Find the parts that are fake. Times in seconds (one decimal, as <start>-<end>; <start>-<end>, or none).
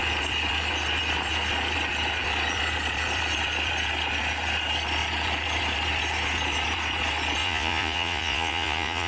7.4-9.1